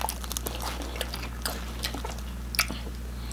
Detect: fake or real real